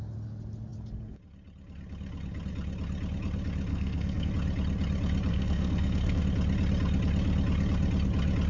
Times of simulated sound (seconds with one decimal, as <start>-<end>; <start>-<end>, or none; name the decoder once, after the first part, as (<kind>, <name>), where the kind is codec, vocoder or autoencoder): 3.7-4.3 (codec, SNAC); 5.3-6.2